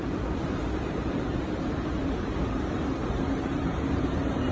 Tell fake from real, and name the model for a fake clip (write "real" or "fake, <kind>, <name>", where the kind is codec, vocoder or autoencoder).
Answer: fake, vocoder, BigVGAN v2